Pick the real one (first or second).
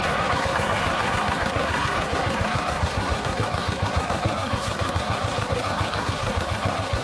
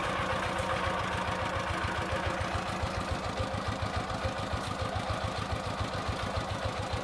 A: second